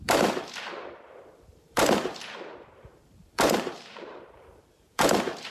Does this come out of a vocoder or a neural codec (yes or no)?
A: yes